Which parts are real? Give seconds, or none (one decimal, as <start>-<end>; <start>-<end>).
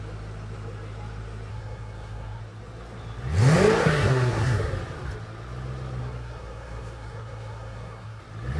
0.0-1.5; 2.4-3.8; 4.7-6.0; 8.2-8.6